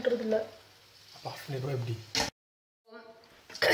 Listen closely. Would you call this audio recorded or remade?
recorded